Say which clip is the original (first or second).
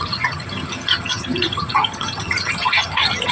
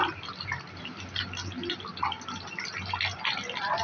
second